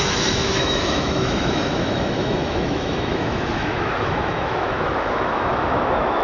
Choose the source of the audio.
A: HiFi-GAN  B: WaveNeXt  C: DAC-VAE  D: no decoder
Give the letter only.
C